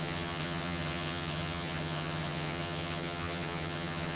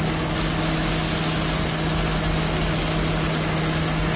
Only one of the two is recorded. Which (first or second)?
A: second